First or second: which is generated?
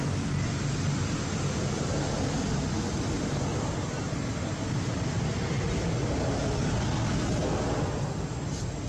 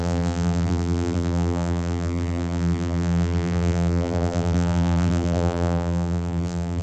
second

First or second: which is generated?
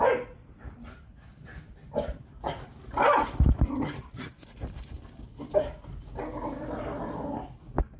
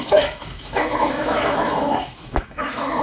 second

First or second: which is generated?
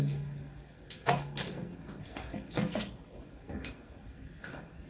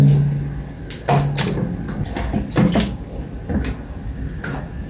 first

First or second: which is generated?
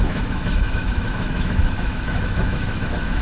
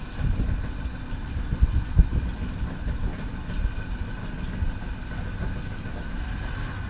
first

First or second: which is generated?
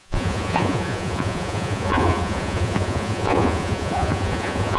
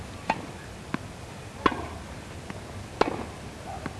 first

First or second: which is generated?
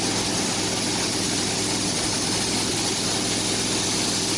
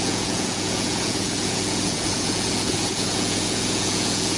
second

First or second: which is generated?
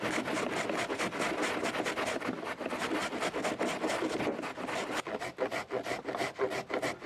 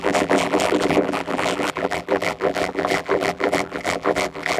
second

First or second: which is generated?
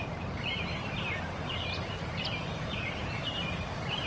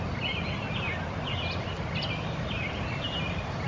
first